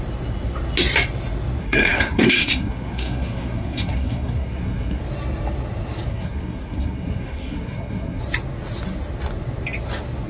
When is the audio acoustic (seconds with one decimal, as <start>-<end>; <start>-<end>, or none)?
0.0-1.6; 5.0-6.1; 8.2-10.3